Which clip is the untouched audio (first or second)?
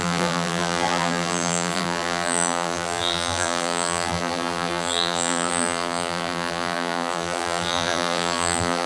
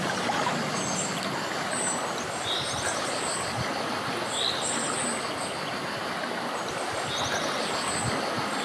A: second